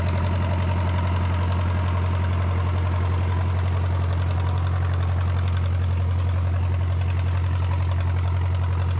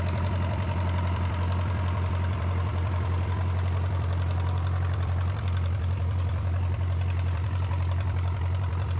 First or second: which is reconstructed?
second